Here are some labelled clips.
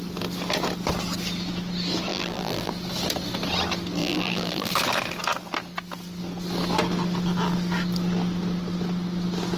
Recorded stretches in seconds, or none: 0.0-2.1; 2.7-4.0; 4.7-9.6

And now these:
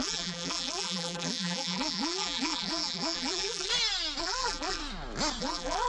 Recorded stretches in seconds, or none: 3.7-4.2; 4.8-5.4

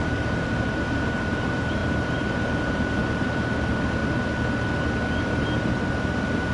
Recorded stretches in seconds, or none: 4.0-5.2

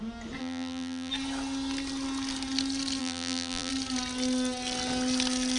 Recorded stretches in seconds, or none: 0.0-0.4; 1.1-3.0; 3.7-5.6

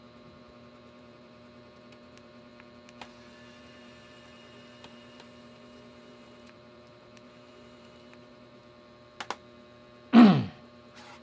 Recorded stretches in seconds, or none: 2.5-3.6; 8.6-10.6

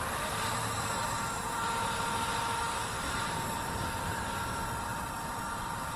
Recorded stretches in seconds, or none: 4.9-5.5

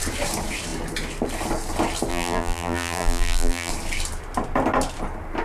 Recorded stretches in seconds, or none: 0.0-2.1; 3.7-5.4

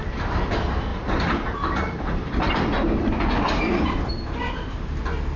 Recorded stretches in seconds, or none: 0.0-0.9; 4.1-5.4